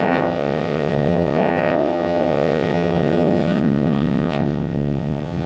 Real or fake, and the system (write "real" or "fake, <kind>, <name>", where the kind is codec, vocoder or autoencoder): fake, vocoder, WaveNeXt